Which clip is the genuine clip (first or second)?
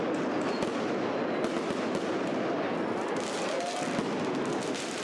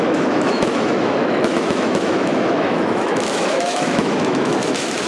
first